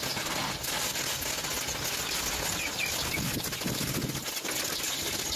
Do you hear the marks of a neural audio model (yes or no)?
no